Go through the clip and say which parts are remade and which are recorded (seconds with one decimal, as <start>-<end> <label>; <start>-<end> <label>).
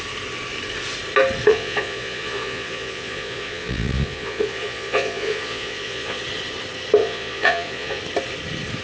0.0-1.5 recorded; 1.5-6.2 remade; 6.2-7.0 recorded; 7.0-8.0 remade; 8.0-8.8 recorded